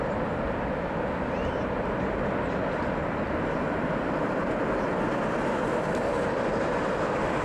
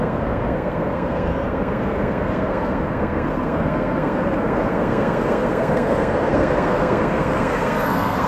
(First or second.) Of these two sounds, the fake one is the second